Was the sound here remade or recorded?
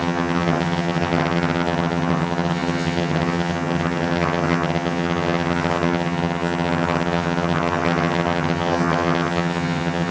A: remade